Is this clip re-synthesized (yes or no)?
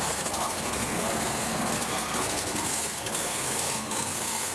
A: yes